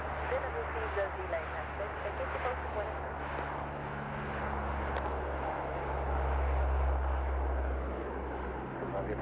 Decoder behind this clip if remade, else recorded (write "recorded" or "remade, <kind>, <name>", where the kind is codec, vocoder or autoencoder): recorded